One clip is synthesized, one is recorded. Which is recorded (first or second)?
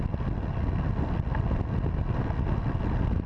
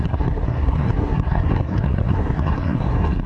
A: first